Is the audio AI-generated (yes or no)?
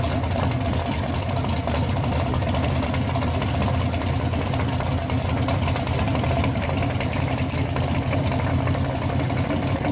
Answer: no